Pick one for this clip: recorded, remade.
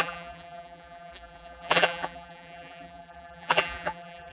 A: remade